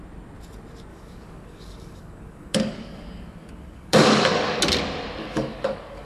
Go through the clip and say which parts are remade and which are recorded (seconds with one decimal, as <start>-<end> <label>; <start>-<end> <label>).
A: 0.0-0.9 recorded; 0.9-4.6 remade; 4.6-5.2 recorded; 5.2-6.1 remade